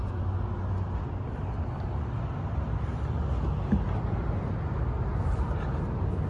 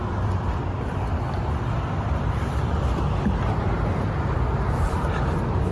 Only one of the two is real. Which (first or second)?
first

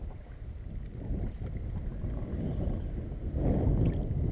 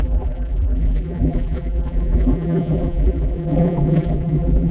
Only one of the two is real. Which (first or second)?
first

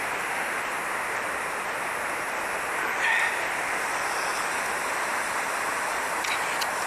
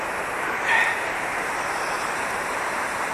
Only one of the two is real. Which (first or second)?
first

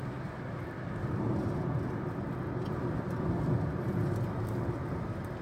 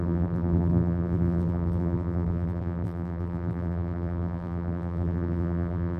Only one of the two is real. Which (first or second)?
first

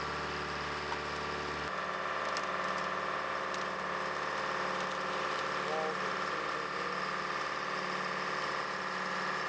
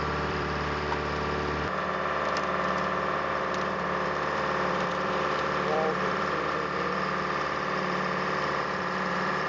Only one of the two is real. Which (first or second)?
first